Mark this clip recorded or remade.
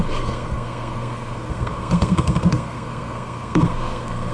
remade